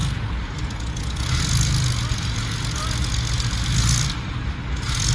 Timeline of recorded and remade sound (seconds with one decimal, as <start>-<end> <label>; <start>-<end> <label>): 0.0-5.1 recorded